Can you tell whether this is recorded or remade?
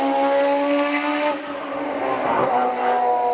recorded